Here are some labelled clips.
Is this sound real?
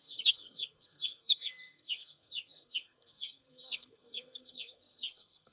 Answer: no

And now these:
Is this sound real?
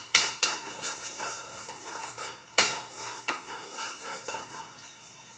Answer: no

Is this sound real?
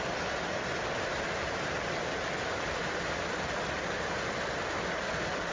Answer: yes